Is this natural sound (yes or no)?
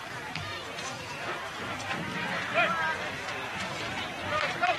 no